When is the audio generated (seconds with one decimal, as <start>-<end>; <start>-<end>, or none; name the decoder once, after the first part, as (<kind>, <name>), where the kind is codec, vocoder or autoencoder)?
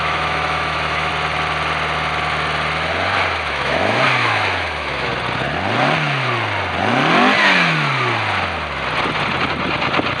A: 0.0-1.1 (autoencoder, DAC-VAE); 3.5-5.1